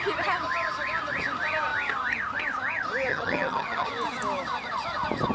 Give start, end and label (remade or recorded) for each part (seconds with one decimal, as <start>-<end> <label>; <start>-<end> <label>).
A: 0.0-3.1 recorded; 3.1-3.9 remade; 3.9-5.3 recorded

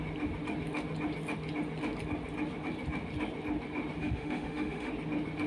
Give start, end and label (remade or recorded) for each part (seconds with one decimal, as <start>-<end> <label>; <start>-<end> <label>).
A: 0.0-4.0 recorded; 4.0-4.9 remade; 4.9-5.5 recorded

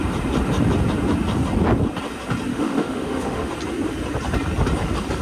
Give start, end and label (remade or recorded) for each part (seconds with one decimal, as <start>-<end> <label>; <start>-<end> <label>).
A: 0.0-2.5 recorded; 2.5-3.5 remade; 3.5-5.2 recorded

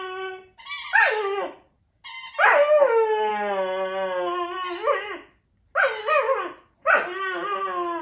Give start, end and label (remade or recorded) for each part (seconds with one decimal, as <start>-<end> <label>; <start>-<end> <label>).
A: 0.0-8.0 recorded

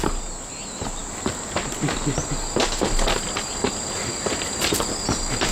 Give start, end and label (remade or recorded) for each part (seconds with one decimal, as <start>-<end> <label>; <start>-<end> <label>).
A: 0.0-5.5 recorded

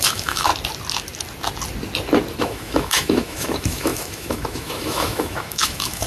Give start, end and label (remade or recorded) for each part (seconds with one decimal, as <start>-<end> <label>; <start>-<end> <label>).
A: 0.0-0.5 remade; 0.5-2.4 recorded; 2.4-6.1 remade

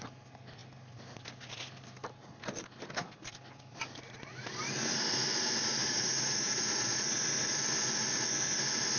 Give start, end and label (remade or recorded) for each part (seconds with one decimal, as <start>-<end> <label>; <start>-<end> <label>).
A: 0.0-5.8 recorded; 5.8-7.2 remade; 7.2-9.0 recorded

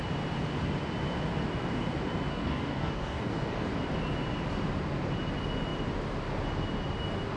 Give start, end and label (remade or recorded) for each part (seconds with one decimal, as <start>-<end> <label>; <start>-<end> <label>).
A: 0.0-2.3 recorded; 2.3-3.7 remade; 3.7-7.4 recorded